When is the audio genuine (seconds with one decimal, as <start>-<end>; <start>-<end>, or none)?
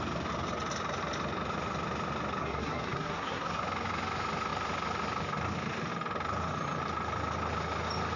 0.0-2.4; 3.6-8.2